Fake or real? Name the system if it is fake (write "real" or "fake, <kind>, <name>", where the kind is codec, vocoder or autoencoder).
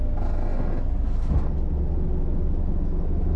real